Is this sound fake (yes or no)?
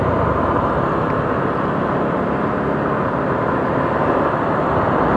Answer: no